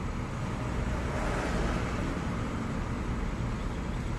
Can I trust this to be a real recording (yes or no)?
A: yes